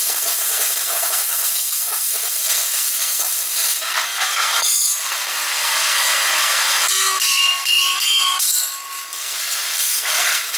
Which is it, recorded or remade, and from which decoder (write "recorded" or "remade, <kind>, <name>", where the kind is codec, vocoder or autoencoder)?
remade, codec, SNAC